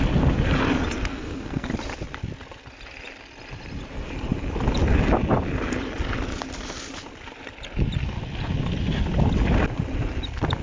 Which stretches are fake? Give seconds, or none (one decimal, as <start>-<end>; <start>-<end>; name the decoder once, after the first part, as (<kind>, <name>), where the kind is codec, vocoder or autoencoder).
1.1-1.7 (codec, SNAC)